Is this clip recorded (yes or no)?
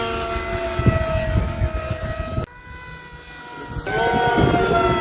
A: yes